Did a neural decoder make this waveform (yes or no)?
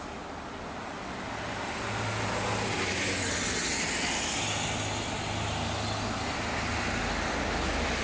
no